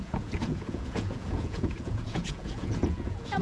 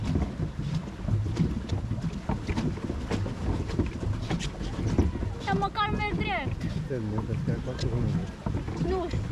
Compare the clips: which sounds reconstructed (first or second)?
first